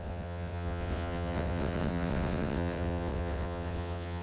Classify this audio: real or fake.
fake